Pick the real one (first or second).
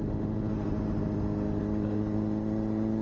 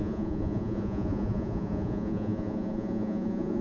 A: first